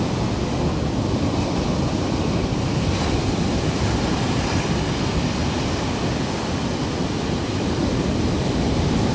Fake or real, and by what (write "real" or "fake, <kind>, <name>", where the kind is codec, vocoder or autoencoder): real